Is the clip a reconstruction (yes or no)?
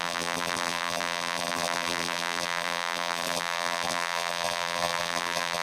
yes